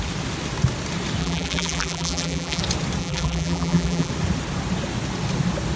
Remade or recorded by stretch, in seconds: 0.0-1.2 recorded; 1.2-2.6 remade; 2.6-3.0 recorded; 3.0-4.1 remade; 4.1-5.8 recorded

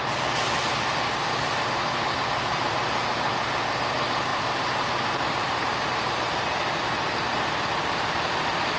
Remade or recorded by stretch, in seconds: 0.0-8.8 remade